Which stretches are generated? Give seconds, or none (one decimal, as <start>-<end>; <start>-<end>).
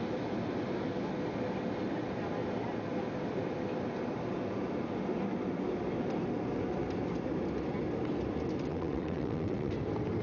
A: 8.7-9.7